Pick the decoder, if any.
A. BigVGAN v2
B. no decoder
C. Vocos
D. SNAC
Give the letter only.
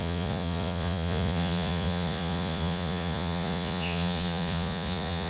C